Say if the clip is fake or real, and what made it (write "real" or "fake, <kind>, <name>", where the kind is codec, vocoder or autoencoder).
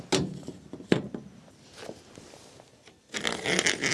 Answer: real